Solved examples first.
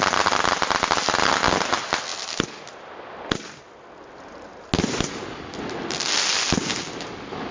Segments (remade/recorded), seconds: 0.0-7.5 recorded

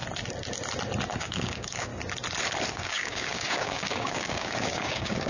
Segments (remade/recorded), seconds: 0.0-1.2 recorded; 1.2-1.9 remade; 1.9-2.7 recorded; 2.7-5.3 remade

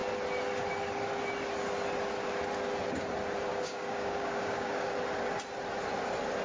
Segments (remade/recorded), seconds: 0.0-3.5 recorded; 3.5-4.9 remade; 4.9-6.4 recorded

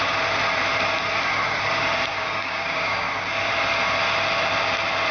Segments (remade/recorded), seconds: 0.0-2.1 recorded; 2.1-3.1 remade; 3.1-5.1 recorded

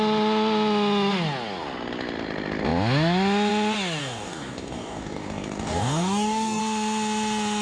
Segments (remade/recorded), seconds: 0.0-4.0 recorded; 4.0-6.6 remade; 6.6-7.6 recorded

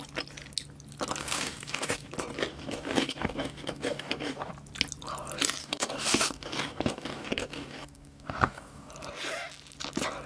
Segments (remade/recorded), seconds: 0.0-1.2 recorded; 1.2-2.1 remade; 2.1-2.5 recorded; 2.5-4.5 remade; 4.5-5.6 recorded; 5.6-8.9 remade; 8.9-10.3 recorded

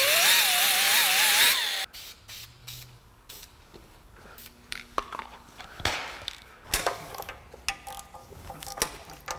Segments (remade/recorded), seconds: 0.0-2.6 recorded; 2.6-7.4 remade; 7.4-8.2 recorded; 8.2-8.8 remade; 8.8-9.4 recorded

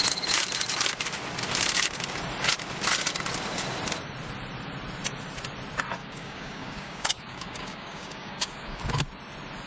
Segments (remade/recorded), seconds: 0.0-6.0 recorded; 6.0-8.8 remade; 8.8-9.7 recorded